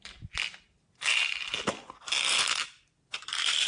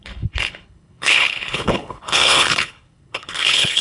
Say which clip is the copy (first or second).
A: second